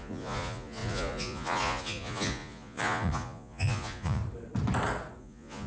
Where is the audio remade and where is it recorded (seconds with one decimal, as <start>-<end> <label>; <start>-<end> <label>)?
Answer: 0.0-4.2 remade; 4.2-5.2 recorded; 5.2-5.7 remade